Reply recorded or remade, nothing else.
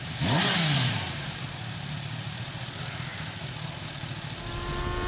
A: recorded